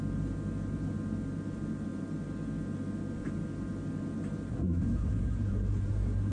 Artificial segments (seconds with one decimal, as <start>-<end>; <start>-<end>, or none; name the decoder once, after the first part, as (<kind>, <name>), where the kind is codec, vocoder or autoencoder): 4.5-6.3 (codec, SNAC)